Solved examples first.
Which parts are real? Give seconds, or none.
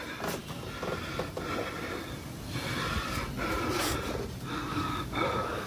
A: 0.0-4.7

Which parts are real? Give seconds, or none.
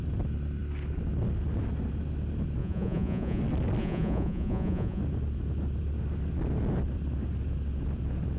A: 0.0-2.6; 3.4-3.8; 5.0-8.4